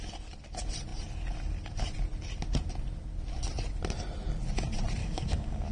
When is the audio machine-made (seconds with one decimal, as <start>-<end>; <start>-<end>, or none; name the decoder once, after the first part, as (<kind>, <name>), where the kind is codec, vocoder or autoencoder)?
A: 5.0-5.7 (codec, DAC)